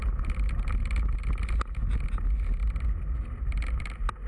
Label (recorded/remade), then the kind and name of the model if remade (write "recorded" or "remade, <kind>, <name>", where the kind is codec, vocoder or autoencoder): recorded